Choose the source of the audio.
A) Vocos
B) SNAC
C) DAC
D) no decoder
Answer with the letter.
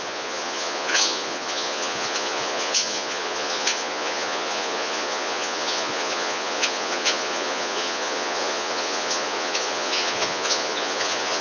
A